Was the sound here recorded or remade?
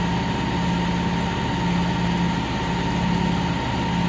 recorded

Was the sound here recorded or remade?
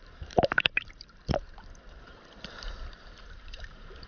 remade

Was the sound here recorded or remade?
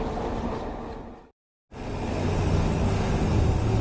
recorded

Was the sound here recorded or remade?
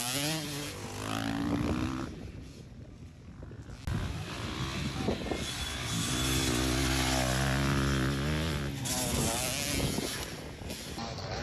recorded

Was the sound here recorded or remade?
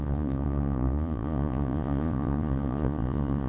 remade